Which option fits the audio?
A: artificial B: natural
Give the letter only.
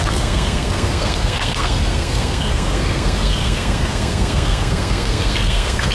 A